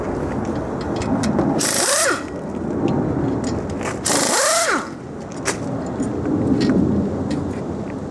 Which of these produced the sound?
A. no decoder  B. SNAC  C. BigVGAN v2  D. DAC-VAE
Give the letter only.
A